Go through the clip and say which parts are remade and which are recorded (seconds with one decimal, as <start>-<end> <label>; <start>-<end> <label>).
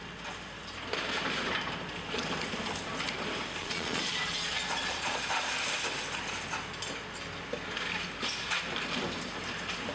0.0-3.6 recorded; 3.6-5.2 remade; 5.2-9.9 recorded